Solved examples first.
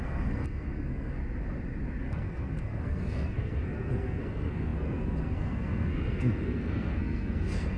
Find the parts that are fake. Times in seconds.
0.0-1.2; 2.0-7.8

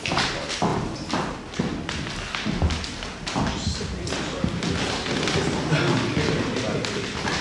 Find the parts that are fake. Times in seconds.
none

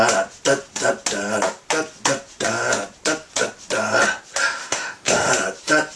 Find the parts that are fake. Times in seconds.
4.6-5.3

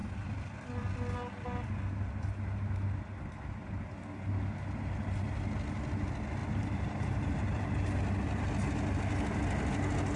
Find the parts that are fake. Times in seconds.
6.4-7.9